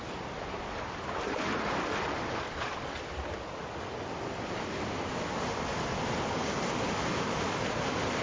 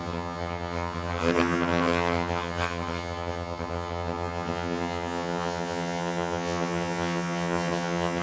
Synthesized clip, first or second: second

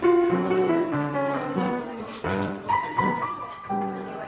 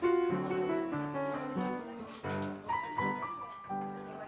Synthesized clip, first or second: first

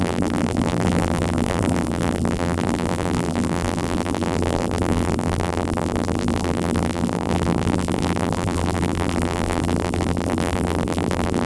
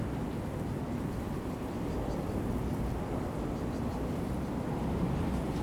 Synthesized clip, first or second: first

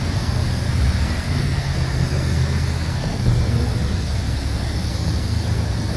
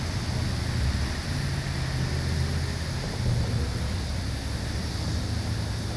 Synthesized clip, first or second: first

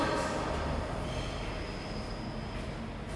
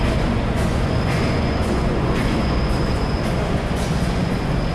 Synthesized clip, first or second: second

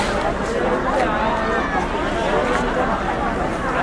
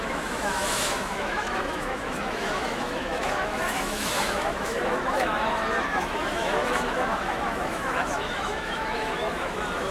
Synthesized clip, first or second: second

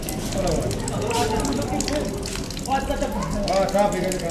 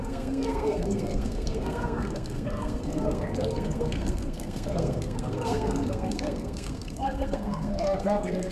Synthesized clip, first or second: second